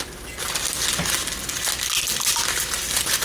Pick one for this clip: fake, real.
real